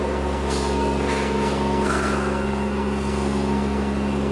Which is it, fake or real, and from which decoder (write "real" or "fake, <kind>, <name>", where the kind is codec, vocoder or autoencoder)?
fake, codec, SNAC